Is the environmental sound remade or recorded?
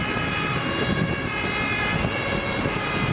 recorded